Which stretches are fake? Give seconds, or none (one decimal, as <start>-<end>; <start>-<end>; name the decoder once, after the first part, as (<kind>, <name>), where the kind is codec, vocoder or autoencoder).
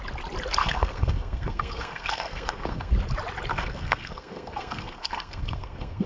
0.6-2.9 (codec, SNAC); 3.5-6.1